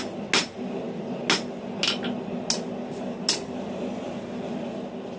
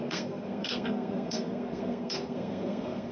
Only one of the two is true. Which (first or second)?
first